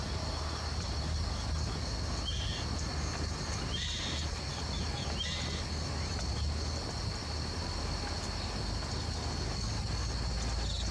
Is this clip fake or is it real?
real